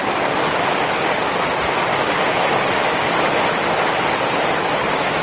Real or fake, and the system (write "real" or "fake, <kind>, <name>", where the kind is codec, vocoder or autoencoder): real